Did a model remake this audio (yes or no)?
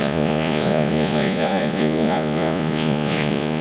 yes